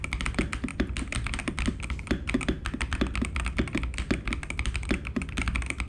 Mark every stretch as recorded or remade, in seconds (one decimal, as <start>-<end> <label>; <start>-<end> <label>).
0.0-5.9 recorded